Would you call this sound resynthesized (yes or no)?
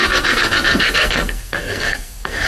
yes